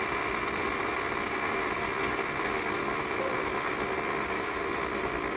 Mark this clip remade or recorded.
recorded